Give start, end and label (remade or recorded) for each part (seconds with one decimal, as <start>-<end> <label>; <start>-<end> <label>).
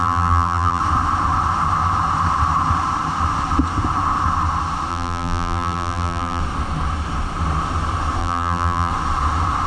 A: 0.0-0.8 remade; 0.8-4.9 recorded; 4.9-6.4 remade; 6.4-8.2 recorded; 8.2-8.9 remade; 8.9-9.7 recorded